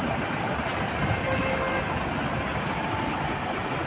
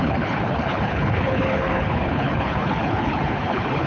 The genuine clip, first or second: first